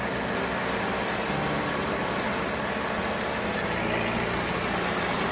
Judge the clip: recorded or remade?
recorded